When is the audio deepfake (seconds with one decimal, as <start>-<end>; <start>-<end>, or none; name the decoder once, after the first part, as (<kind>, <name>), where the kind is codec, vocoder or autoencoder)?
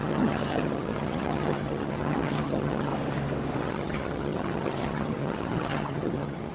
0.0-2.9 (vocoder, HiFi-GAN); 3.6-6.5